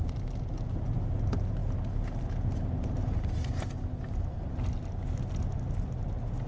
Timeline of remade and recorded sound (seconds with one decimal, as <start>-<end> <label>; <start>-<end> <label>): 0.0-6.5 recorded